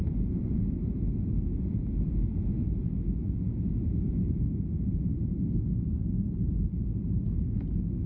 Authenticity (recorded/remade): recorded